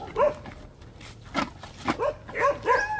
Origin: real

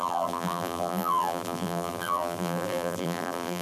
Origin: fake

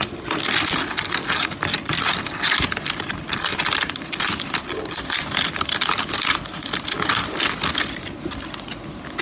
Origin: real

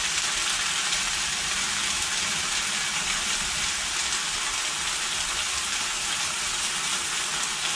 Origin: real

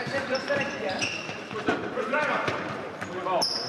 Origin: fake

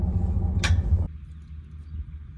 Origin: real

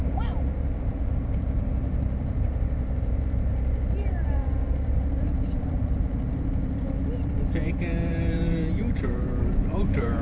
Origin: fake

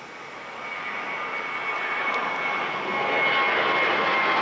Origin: real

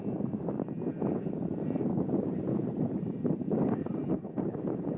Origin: fake